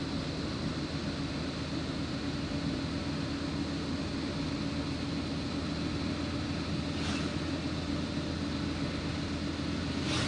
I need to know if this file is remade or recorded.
recorded